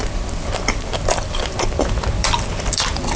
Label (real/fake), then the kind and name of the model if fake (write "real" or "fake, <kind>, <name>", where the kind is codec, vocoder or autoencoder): fake, vocoder, BigVGAN v2